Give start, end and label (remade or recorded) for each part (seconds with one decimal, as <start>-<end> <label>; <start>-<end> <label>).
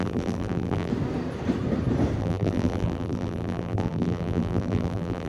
0.0-0.9 remade; 0.9-2.2 recorded; 2.2-5.3 remade